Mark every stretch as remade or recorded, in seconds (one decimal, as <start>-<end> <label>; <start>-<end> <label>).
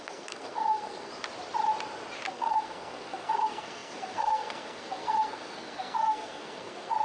0.0-1.1 remade; 1.1-2.3 recorded; 2.3-7.0 remade